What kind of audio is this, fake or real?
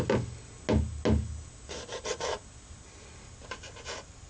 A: real